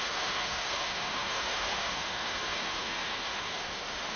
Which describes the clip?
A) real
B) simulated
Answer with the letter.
B